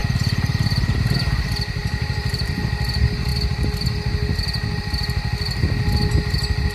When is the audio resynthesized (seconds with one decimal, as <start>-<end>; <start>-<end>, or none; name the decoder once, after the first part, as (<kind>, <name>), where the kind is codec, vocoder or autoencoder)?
1.8-2.6 (vocoder, BigVGAN v2)